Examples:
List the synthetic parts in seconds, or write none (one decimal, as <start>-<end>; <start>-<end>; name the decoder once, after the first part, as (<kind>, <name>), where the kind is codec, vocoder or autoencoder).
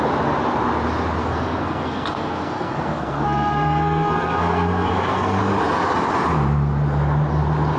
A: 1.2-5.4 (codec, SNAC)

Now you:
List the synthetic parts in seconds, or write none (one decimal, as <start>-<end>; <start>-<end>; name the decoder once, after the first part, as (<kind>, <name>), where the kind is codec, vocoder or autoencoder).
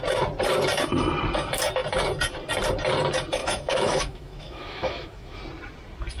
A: 3.4-5.4 (autoencoder, DAC-VAE)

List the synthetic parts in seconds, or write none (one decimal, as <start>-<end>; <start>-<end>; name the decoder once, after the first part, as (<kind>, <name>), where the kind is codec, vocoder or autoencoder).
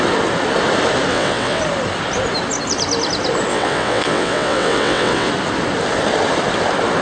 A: 1.1-1.6 (vocoder, WaveNeXt); 3.5-5.3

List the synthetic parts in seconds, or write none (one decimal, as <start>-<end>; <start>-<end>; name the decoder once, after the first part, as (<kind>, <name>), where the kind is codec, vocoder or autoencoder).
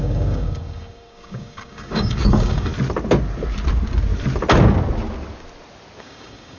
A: 0.0-2.7 (codec, DAC); 6.0-6.6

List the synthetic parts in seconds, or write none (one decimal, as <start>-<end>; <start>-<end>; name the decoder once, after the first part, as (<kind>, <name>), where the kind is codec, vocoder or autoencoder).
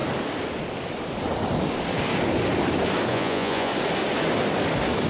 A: 3.1-3.7 (vocoder, Vocos)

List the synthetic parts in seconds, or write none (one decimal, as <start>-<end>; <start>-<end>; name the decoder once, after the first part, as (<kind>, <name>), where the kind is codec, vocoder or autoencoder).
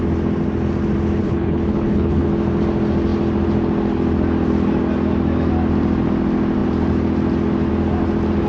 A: 1.2-2.3 (codec, HILCodec)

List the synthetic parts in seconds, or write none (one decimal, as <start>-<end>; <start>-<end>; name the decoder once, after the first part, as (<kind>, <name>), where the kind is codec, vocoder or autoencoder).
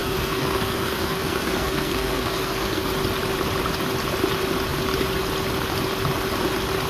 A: 0.0-2.9 (codec, SNAC)